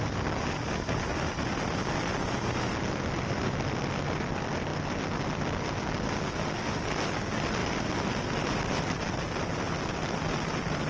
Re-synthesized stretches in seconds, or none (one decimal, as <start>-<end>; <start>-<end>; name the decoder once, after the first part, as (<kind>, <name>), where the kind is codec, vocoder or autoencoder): none